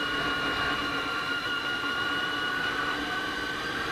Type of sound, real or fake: fake